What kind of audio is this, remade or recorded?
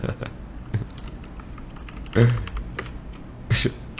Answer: recorded